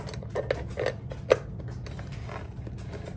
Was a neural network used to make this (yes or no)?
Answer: no